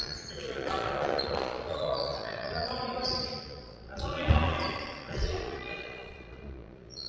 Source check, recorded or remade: remade